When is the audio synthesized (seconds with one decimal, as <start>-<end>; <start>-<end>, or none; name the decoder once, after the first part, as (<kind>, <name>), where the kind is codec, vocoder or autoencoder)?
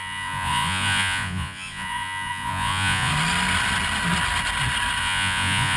0.0-3.1 (vocoder, Vocos); 5.0-5.8